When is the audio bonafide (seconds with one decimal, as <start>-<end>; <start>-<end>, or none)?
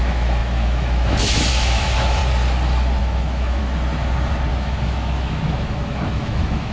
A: 2.2-3.0; 3.6-4.5